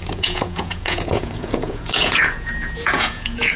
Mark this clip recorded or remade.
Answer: remade